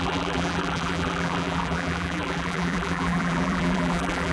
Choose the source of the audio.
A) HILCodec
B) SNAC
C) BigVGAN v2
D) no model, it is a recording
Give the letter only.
C